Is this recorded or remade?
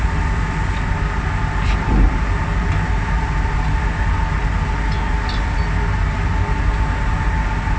recorded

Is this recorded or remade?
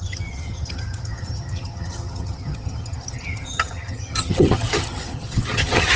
remade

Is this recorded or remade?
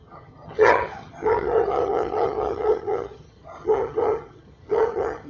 remade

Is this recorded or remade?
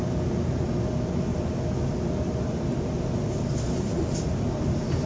recorded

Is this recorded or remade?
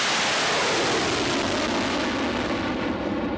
recorded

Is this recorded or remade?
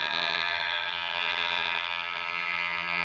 remade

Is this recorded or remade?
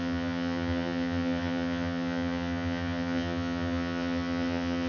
remade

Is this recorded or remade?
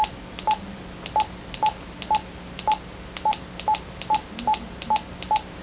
recorded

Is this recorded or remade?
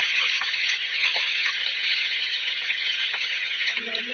remade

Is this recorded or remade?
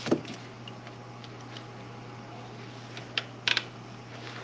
recorded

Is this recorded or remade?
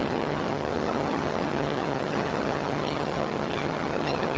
remade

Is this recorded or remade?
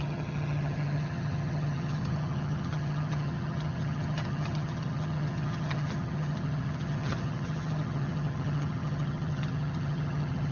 remade